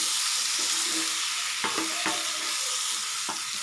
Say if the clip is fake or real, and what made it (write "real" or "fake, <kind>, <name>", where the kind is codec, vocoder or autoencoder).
real